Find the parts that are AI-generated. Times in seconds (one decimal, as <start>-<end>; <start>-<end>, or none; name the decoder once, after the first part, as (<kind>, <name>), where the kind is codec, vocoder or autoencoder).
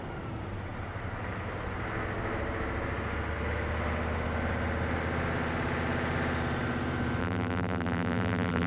7.2-8.7 (vocoder, BigVGAN v2)